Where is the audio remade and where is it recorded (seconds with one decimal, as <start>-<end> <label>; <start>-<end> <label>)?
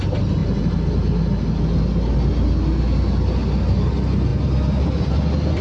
0.0-5.6 recorded